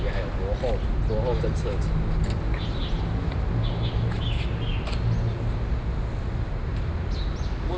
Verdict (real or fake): real